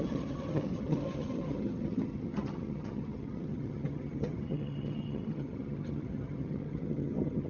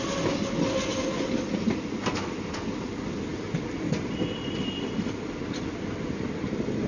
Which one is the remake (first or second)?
first